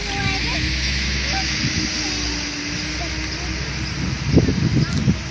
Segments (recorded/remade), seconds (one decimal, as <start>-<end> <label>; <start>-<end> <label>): 0.0-0.5 recorded; 0.5-1.6 remade; 1.6-5.3 recorded